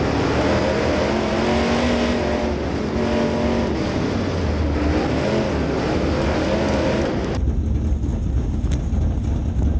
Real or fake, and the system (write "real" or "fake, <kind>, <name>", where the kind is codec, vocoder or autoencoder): real